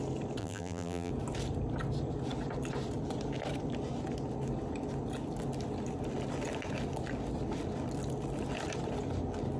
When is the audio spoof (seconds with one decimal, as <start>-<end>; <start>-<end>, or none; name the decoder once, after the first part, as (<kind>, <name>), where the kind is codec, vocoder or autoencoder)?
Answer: 0.4-1.1 (vocoder, BigVGAN v2)